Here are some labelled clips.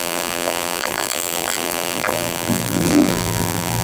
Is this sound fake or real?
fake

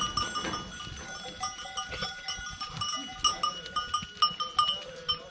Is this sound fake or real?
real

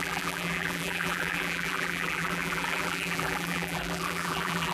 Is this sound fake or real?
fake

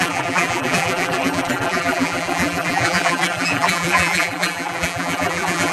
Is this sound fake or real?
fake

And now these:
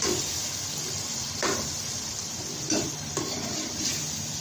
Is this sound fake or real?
fake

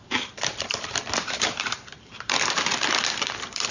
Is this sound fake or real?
fake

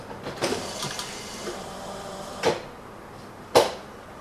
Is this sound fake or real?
fake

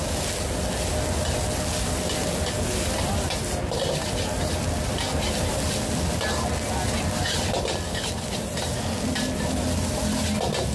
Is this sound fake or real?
real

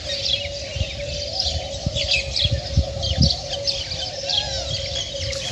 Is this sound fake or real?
real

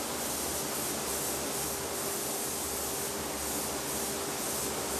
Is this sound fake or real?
real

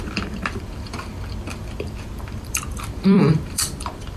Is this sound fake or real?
fake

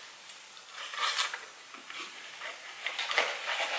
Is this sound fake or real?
fake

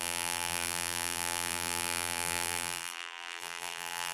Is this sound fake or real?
fake